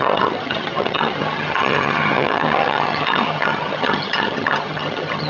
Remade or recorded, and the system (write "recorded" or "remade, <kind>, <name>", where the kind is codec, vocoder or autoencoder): remade, vocoder, HiFi-GAN